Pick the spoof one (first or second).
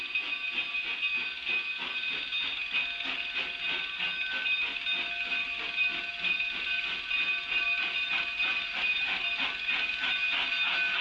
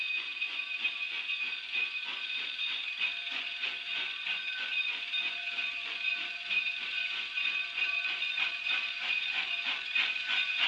second